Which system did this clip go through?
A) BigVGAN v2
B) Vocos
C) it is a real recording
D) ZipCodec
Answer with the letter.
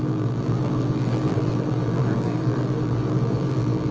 A